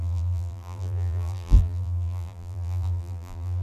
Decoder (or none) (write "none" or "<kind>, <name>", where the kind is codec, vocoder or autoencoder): vocoder, BigVGAN v2